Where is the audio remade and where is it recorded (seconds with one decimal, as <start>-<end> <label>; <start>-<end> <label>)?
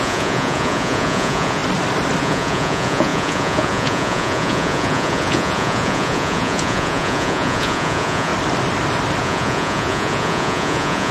0.0-1.6 remade; 1.6-2.2 recorded; 2.2-8.3 remade; 8.3-9.2 recorded; 9.2-11.1 remade